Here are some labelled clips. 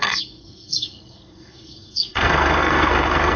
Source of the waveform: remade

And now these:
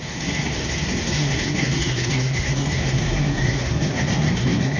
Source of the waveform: remade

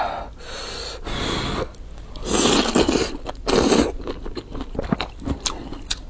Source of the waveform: recorded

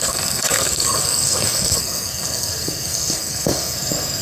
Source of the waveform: remade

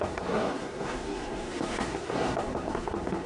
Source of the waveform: remade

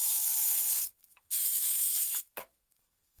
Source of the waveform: remade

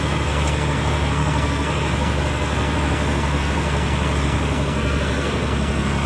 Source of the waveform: remade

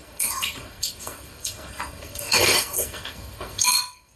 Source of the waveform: remade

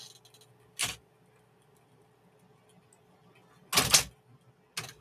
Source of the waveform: recorded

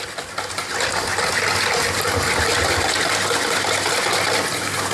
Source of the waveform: recorded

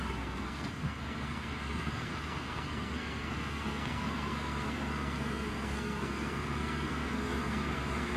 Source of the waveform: remade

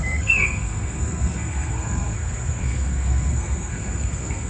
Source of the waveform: remade